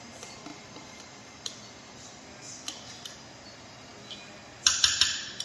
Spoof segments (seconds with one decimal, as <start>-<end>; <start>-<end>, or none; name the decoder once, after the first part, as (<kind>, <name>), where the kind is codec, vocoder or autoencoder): 0.0-3.9 (vocoder, BigVGAN v2); 4.7-5.4